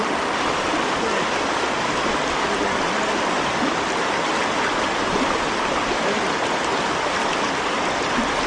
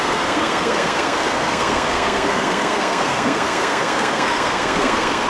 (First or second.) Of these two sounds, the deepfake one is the second